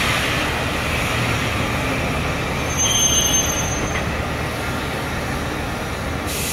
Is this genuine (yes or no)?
yes